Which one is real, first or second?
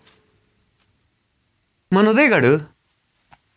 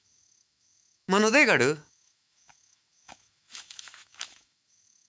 first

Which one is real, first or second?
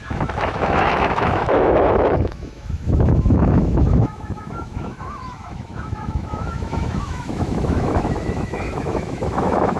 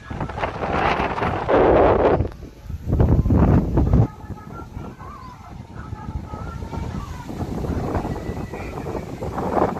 second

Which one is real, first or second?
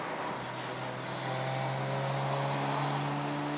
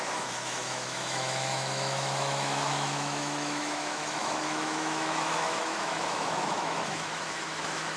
first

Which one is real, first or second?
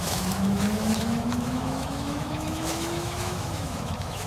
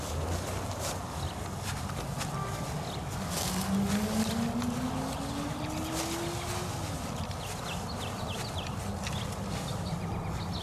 second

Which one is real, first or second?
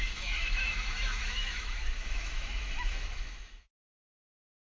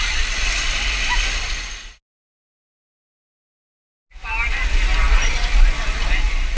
second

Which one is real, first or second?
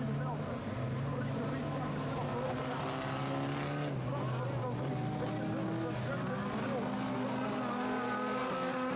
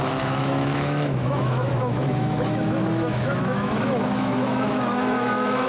first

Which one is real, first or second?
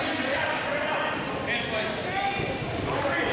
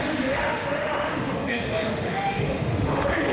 first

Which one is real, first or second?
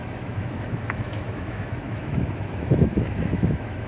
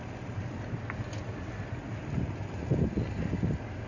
second